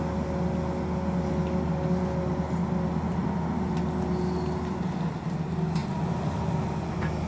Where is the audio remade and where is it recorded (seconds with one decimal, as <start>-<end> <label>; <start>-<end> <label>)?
0.0-7.3 recorded